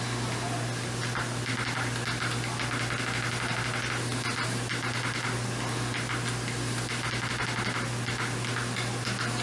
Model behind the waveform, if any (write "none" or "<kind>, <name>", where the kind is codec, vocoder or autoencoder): none